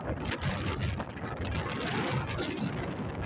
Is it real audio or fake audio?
real